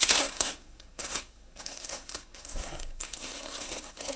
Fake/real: fake